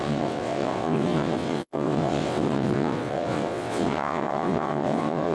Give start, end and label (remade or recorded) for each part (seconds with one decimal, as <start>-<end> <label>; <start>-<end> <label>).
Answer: 0.0-5.3 remade